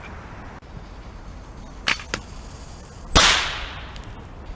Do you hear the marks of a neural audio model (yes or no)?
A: no